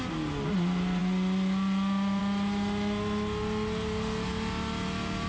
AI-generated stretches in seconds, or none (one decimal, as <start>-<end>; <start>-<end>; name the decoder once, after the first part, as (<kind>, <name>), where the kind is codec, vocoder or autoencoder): none